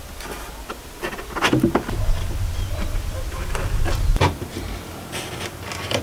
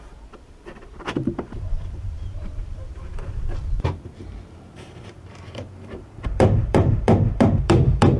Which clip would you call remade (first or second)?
second